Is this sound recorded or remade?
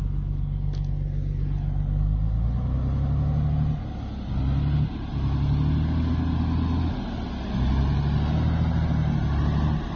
recorded